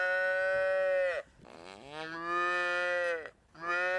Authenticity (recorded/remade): recorded